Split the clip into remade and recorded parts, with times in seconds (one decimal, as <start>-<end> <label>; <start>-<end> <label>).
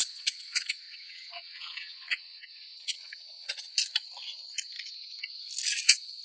0.0-3.7 remade; 3.7-6.2 recorded